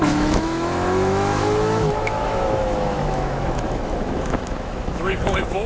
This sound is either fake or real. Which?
fake